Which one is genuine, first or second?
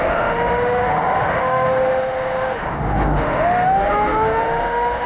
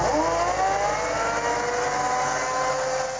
second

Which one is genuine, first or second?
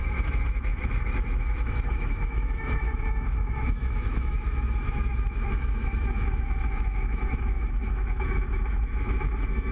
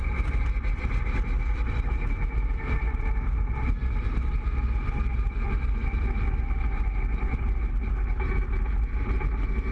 second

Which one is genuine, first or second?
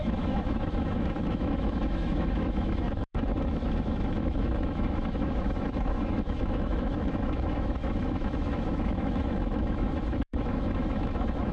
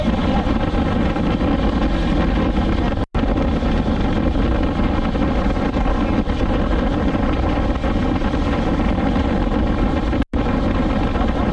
second